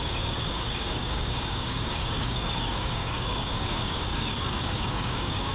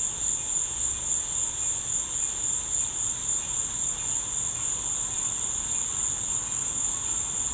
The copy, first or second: first